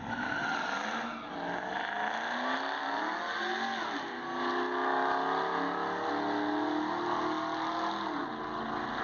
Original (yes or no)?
yes